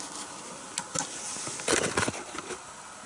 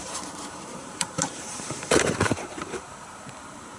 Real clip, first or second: first